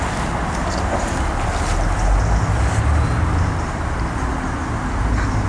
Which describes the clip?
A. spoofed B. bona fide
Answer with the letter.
B